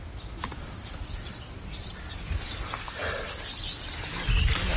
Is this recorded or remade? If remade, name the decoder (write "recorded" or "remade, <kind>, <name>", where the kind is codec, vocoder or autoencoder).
recorded